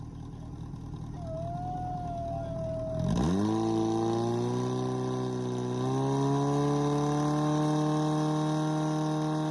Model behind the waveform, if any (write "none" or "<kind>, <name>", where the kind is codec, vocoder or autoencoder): none